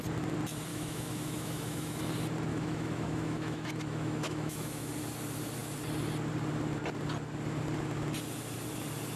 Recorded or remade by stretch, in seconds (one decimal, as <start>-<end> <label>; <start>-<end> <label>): 0.0-0.7 recorded; 0.7-2.0 remade; 2.0-2.5 recorded; 2.5-4.9 remade; 4.9-9.2 recorded